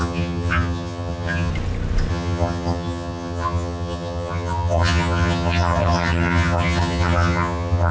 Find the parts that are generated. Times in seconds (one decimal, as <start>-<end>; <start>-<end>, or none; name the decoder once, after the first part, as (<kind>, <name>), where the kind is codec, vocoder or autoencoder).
0.0-1.5 (vocoder, HiFi-GAN); 2.1-7.9